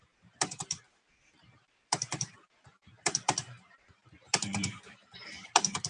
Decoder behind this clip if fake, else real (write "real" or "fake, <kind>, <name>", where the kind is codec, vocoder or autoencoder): fake, vocoder, BigVGAN v2